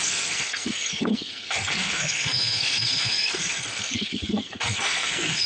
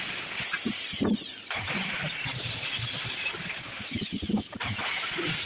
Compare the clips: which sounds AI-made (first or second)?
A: first